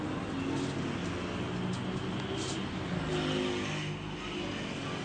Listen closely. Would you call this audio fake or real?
real